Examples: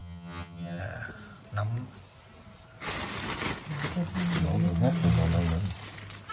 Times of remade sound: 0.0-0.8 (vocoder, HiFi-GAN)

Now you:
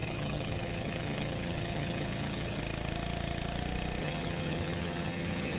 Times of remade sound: 0.0-2.6 (vocoder, HiFi-GAN); 4.0-5.6